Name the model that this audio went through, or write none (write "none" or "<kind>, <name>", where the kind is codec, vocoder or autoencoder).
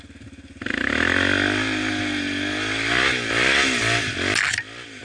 none